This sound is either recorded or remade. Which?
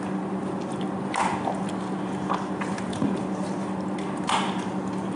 recorded